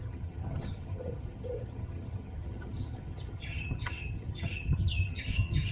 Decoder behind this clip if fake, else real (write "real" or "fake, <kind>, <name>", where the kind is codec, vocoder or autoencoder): fake, vocoder, HiFi-GAN